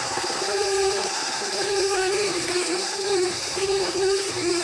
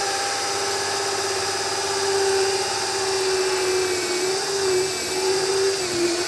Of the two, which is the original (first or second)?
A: second